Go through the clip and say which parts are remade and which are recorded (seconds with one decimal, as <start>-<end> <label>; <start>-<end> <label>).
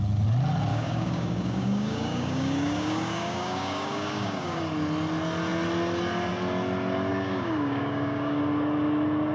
0.0-0.7 recorded; 0.7-4.6 remade; 4.6-7.1 recorded; 7.1-8.4 remade; 8.4-9.3 recorded